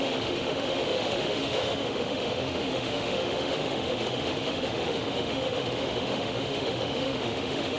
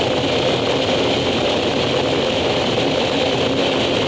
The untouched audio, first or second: second